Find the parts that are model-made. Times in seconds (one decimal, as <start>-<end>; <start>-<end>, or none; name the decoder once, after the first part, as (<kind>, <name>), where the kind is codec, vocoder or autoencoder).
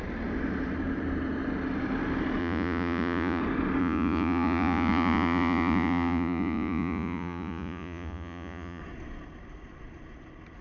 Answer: 2.4-3.4 (vocoder, Vocos); 3.8-8.8